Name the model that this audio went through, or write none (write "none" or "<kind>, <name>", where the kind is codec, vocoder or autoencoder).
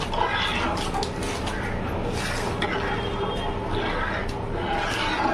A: none